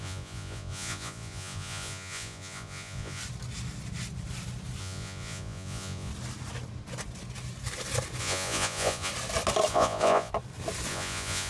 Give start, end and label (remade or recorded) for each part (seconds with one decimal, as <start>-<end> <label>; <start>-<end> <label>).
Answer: 0.0-3.2 remade; 3.2-4.8 recorded; 4.8-6.1 remade; 6.1-8.2 recorded; 8.2-9.1 remade; 9.1-9.7 recorded; 9.7-10.3 remade; 10.3-10.9 recorded; 10.9-11.5 remade